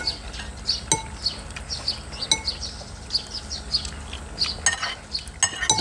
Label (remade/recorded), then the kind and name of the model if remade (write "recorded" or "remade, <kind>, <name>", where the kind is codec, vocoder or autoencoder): recorded